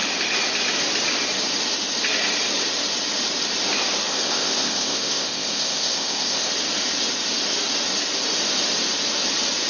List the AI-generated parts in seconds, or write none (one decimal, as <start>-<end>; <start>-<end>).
4.1-6.5